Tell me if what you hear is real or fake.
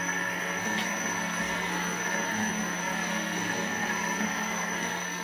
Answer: fake